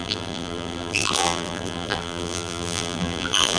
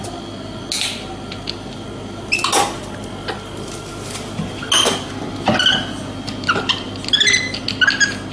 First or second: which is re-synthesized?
first